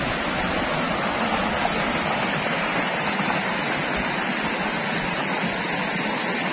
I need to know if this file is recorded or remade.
recorded